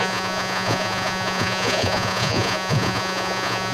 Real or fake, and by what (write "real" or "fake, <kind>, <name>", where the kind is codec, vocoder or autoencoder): fake, vocoder, Vocos